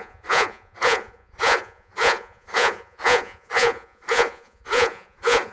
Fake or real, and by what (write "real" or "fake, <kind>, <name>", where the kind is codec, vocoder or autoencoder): fake, vocoder, Vocos